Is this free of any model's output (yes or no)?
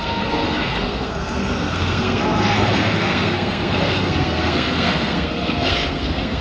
no